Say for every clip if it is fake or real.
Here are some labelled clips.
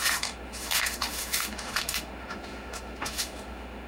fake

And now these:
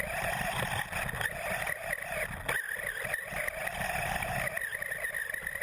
real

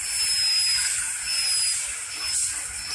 real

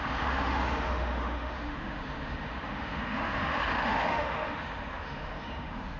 fake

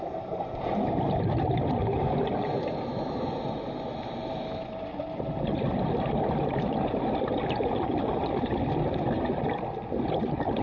real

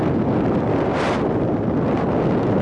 real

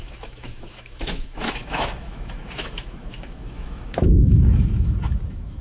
fake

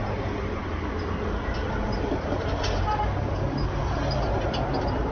real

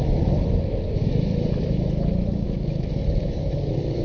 fake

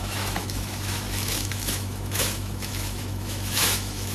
fake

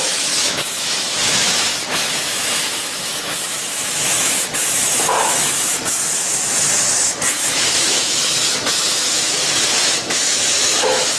fake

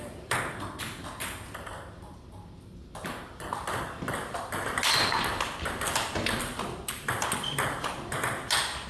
real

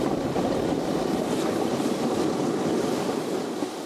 real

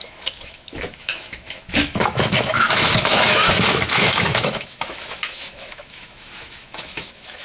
fake